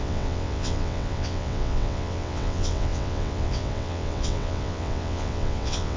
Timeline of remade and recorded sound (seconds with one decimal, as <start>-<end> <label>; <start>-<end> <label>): 0.0-6.0 remade